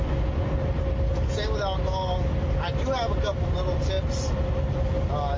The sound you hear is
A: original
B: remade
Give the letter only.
A